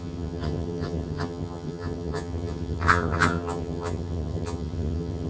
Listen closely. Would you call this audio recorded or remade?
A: remade